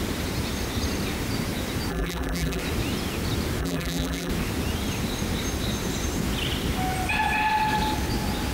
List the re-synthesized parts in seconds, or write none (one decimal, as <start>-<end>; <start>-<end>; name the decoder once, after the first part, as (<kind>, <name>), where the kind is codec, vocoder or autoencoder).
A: 1.9-2.6 (vocoder, BigVGAN v2); 3.6-4.3